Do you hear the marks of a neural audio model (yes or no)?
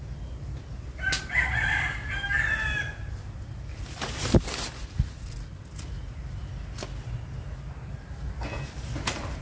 no